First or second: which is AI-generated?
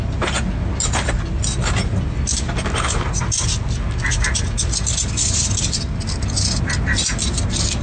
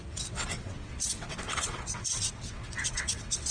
second